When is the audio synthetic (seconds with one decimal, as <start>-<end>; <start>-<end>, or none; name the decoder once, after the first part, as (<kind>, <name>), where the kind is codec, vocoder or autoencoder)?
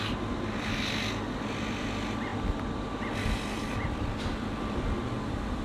none